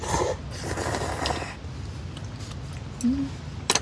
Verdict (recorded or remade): recorded